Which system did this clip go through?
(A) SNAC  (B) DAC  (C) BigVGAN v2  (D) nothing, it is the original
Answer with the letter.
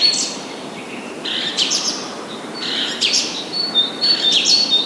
C